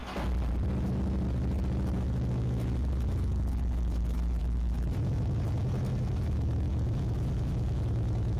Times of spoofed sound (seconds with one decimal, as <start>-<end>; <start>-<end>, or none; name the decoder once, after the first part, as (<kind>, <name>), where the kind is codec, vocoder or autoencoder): 1.6-8.4 (autoencoder, DAC-VAE)